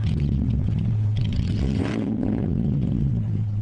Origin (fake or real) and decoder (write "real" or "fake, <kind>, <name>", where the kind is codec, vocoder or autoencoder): fake, vocoder, WaveNeXt